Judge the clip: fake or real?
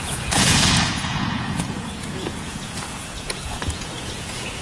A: fake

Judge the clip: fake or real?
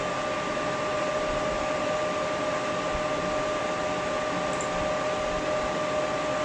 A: real